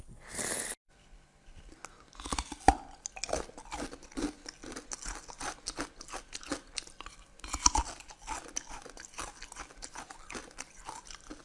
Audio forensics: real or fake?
real